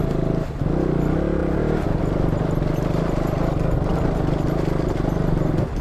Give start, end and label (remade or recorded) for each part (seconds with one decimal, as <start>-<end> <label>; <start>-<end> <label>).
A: 0.0-1.4 recorded; 1.4-2.0 remade; 2.0-5.8 recorded